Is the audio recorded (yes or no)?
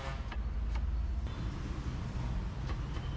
yes